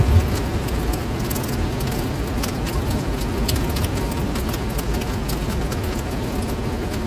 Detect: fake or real real